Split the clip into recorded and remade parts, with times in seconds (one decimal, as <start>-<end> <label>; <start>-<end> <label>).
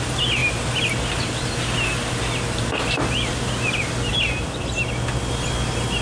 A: 0.0-6.0 recorded